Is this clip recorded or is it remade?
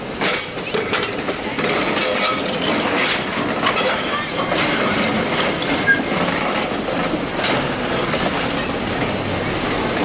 recorded